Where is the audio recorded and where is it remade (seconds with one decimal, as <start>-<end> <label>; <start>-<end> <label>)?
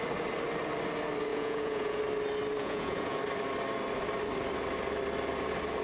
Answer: 0.0-1.3 recorded; 1.3-2.0 remade; 2.0-2.6 recorded; 2.6-3.2 remade; 3.2-5.8 recorded